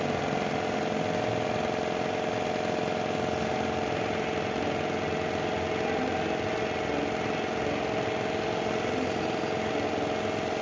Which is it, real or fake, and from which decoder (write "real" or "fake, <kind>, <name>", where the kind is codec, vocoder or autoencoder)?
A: real